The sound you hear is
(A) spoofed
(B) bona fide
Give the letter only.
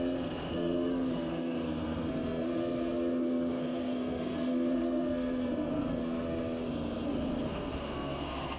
A